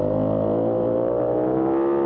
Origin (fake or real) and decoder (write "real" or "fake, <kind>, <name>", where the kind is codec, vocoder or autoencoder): real